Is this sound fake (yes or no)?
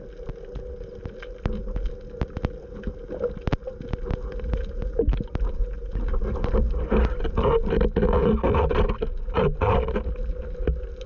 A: no